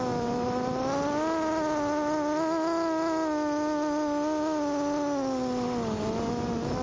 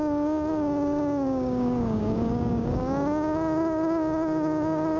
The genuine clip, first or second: first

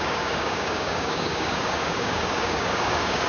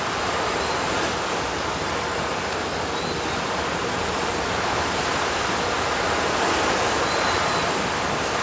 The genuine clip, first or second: second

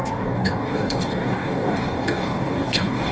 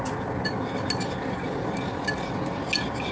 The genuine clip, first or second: second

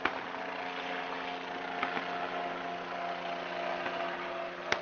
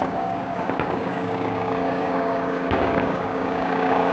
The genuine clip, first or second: first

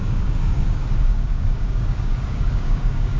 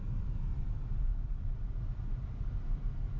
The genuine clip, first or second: second